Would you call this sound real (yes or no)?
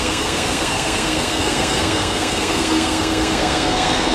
no